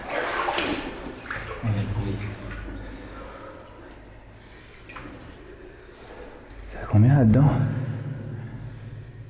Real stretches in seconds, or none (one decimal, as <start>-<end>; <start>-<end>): 0.0-0.7; 2.0-9.3